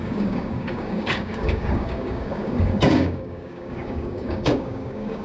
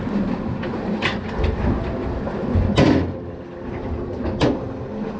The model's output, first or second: first